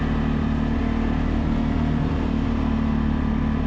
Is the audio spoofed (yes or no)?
no